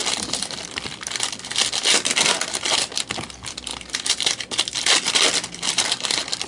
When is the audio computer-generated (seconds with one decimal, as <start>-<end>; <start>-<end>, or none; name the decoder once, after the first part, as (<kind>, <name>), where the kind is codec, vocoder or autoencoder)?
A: none